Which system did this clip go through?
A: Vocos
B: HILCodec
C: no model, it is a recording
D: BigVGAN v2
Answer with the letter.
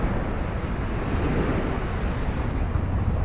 C